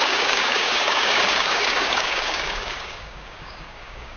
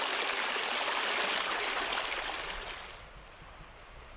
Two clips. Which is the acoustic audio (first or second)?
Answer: second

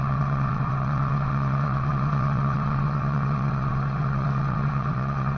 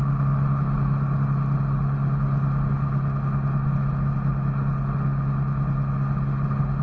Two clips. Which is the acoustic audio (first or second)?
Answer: second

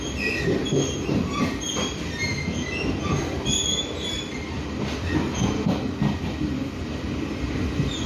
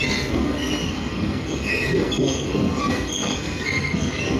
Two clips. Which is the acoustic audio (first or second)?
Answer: first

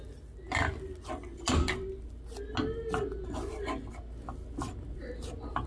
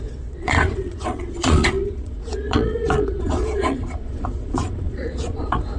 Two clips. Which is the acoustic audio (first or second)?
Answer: first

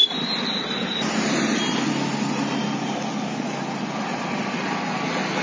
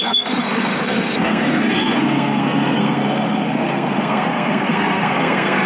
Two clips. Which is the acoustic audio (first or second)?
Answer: first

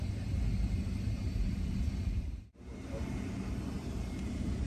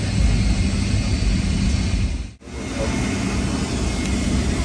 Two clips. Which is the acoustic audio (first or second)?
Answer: second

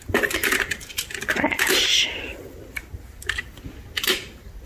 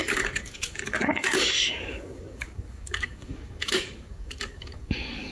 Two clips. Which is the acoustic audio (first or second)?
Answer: first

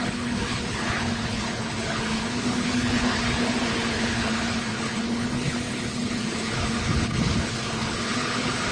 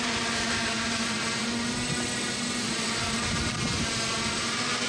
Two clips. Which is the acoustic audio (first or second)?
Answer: second